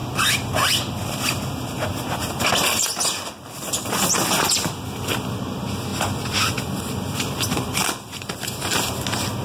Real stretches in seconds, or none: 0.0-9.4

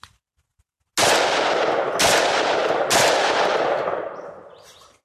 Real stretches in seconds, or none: 0.0-5.0

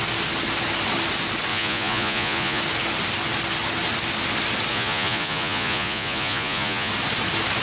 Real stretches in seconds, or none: 0.0-1.5; 2.6-4.7; 6.9-7.6

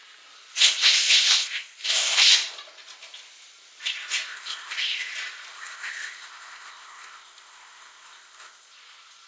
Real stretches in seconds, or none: 0.0-0.5; 2.3-4.3; 5.1-5.5; 8.7-9.3

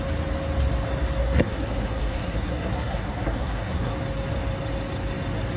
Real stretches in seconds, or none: 0.0-1.2; 3.9-5.6

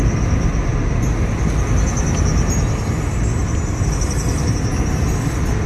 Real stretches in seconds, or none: 0.0-2.3; 2.8-4.7

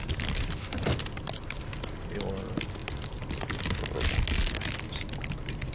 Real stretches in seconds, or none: 0.0-5.7